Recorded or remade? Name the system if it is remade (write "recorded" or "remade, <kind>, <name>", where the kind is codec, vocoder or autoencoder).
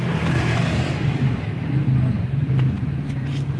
remade, vocoder, BigVGAN v2